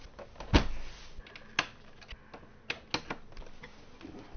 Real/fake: real